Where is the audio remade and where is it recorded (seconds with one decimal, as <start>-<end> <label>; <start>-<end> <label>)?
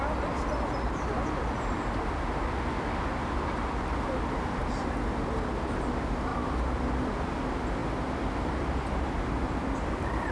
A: 0.0-10.3 recorded